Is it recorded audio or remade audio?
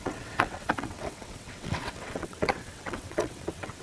remade